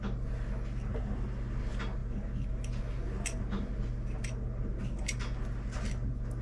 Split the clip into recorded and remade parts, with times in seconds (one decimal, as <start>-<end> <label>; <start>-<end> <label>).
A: 0.0-6.4 recorded